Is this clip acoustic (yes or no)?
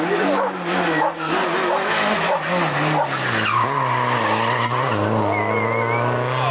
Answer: yes